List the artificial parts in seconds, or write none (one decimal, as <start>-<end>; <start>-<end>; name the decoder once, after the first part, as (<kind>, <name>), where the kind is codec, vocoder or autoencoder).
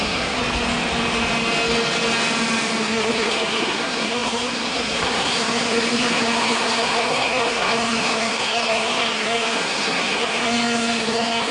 0.0-0.4 (codec, SNAC); 2.8-11.5